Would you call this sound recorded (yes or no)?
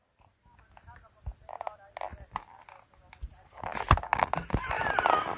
yes